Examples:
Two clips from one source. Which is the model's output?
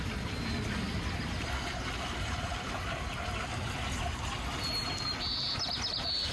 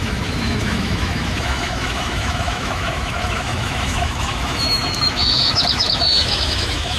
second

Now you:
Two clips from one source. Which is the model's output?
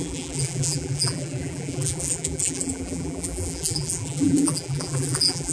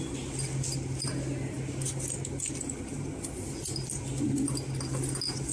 first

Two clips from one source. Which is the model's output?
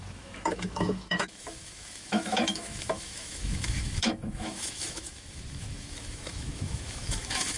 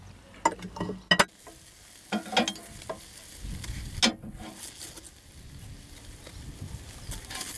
first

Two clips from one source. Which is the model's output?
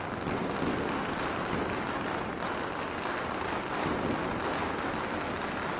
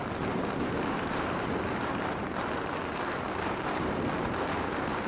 second